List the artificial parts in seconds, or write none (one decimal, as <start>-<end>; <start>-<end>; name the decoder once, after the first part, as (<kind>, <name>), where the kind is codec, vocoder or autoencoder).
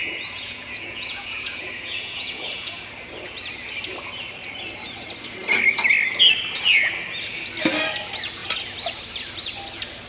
0.0-2.7 (vocoder, Vocos)